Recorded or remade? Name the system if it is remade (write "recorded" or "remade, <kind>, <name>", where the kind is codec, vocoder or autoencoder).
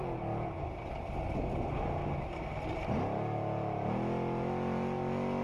recorded